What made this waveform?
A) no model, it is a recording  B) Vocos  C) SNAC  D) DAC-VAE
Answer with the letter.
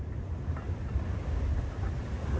A